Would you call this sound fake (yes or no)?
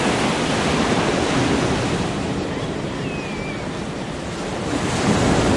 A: no